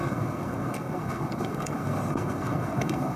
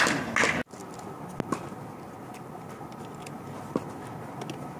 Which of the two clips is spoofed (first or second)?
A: first